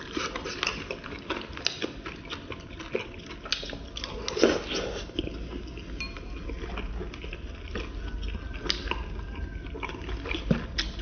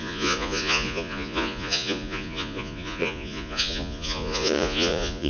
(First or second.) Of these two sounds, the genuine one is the first